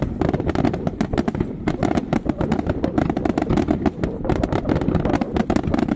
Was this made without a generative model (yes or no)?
no